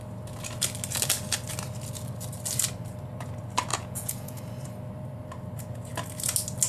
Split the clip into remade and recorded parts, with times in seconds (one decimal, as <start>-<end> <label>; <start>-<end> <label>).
0.0-3.7 recorded; 3.7-4.4 remade; 4.4-6.7 recorded